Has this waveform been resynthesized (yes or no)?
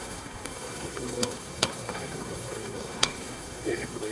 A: yes